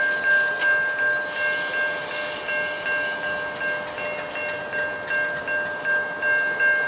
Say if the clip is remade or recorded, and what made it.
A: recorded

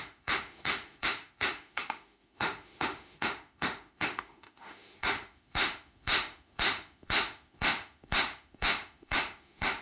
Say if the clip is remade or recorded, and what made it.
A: remade, autoencoder, DAC-VAE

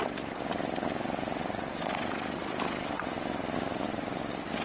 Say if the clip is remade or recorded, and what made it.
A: recorded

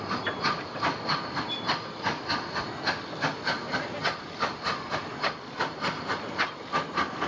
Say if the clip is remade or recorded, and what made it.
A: recorded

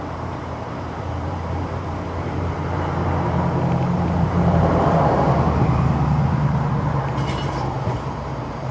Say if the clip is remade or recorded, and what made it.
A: remade, vocoder, BigVGAN v2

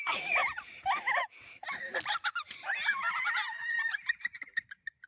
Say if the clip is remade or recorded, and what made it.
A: recorded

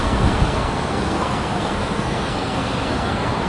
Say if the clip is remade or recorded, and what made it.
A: remade, codec, SNAC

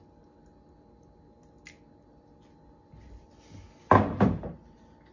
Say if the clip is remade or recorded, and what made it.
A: recorded